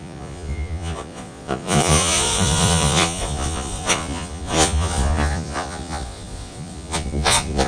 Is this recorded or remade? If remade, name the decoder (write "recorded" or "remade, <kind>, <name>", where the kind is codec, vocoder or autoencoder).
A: remade, vocoder, Vocos